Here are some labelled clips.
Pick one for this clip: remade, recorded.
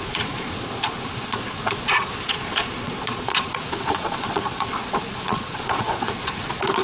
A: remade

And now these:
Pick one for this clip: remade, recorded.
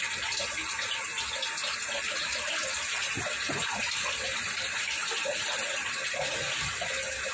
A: recorded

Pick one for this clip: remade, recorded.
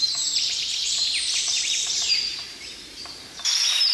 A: remade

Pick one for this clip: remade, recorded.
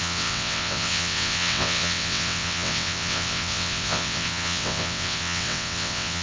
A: remade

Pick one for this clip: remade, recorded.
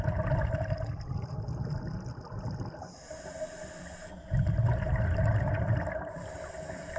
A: recorded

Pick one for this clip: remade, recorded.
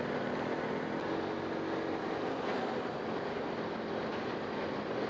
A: recorded